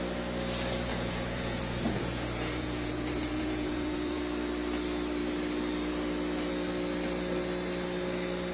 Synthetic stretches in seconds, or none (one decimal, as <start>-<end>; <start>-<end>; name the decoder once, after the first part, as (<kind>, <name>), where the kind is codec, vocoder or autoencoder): 0.9-4.2 (vocoder, Vocos)